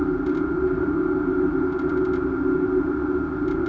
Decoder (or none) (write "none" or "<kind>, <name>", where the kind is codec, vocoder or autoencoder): none